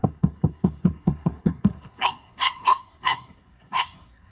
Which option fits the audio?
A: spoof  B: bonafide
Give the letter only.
A